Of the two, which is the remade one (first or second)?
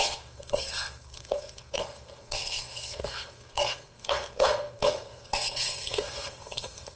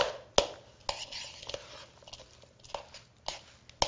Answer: first